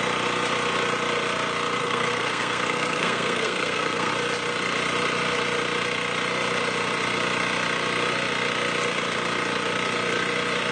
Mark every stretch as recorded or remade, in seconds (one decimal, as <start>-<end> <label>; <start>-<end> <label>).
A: 0.0-1.8 recorded; 1.8-4.1 remade; 4.1-10.7 recorded